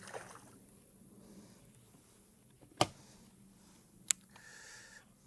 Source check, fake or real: real